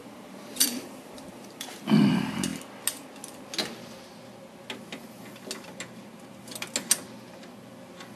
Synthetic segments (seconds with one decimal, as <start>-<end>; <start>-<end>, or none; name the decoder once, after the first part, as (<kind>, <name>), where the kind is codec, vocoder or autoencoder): 0.0-1.8 (vocoder, BigVGAN v2)